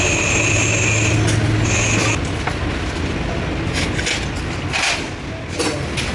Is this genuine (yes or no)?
yes